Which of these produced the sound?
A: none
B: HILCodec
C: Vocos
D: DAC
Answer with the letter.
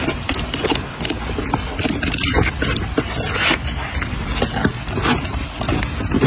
A